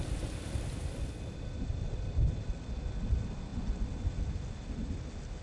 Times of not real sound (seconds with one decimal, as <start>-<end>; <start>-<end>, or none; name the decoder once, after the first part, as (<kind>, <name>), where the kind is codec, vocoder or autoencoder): none